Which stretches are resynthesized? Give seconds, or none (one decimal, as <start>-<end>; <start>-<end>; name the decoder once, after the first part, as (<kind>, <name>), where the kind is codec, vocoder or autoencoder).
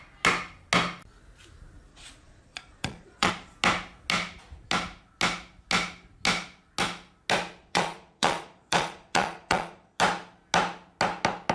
1.9-3.3 (vocoder, Vocos); 7.6-10.0